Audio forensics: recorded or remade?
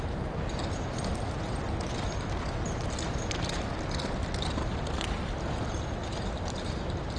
recorded